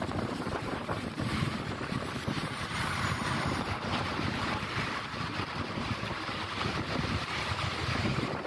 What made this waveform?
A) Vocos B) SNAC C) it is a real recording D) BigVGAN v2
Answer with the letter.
D